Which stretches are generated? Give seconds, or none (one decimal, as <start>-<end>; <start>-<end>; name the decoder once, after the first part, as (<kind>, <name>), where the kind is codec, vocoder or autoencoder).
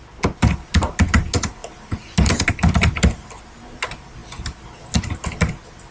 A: none